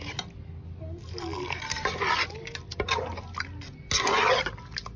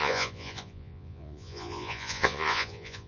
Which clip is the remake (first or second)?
second